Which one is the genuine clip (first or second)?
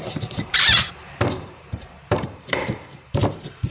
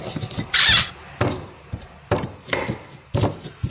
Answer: second